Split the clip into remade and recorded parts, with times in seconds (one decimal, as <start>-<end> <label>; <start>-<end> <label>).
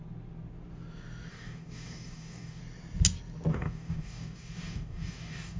0.0-1.3 recorded; 1.3-2.6 remade; 2.6-3.5 recorded; 3.5-5.6 remade